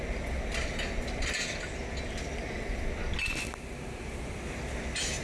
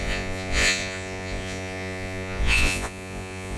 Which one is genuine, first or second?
first